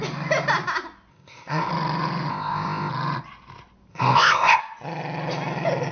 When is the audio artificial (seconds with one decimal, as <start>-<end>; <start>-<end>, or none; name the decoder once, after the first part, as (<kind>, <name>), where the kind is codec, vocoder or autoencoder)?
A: 1.1-1.7 (codec, ZipCodec); 2.3-2.9; 3.9-4.6